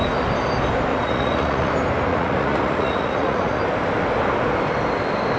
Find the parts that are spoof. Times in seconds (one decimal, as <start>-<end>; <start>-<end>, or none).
0.9-1.7; 2.1-3.6